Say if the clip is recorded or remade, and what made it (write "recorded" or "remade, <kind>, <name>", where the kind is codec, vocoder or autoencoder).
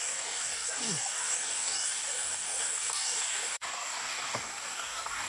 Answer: remade, codec, DAC